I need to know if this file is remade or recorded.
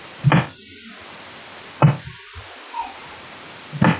recorded